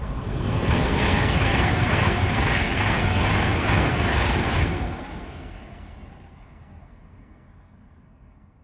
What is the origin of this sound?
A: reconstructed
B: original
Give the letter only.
A